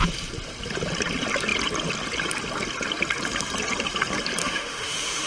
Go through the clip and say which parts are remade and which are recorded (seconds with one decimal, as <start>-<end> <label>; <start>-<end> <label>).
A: 0.0-4.4 recorded; 4.4-5.3 remade

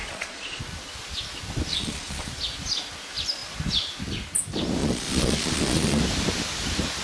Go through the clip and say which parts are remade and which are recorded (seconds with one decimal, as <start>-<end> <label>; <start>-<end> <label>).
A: 0.0-0.6 remade; 0.6-1.7 recorded; 1.7-2.3 remade; 2.3-4.8 recorded; 4.8-6.0 remade; 6.0-7.0 recorded

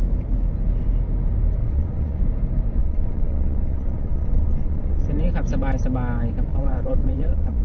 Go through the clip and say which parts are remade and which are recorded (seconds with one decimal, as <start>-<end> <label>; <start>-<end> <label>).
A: 0.0-1.6 recorded; 1.6-2.2 remade; 2.2-2.8 recorded; 2.8-5.1 remade; 5.1-6.5 recorded; 6.5-7.6 remade